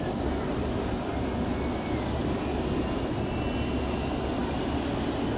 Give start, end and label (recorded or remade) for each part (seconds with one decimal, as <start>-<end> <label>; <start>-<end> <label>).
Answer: 0.0-5.4 recorded